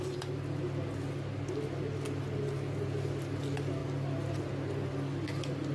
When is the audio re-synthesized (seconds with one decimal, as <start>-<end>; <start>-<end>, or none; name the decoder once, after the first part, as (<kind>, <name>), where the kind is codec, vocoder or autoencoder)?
none